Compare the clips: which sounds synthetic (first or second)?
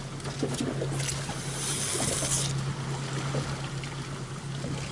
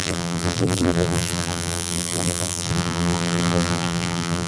second